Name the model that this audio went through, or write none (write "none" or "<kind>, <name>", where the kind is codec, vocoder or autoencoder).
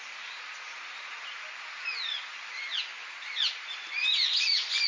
none